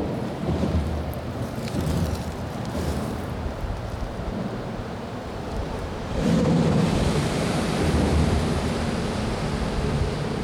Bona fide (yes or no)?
no